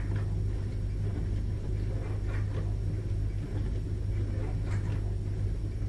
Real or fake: real